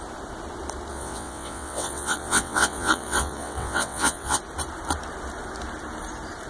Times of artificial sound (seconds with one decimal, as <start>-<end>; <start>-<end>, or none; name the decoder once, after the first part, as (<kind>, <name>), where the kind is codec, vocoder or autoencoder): 0.9-4.4 (vocoder, WaveNeXt)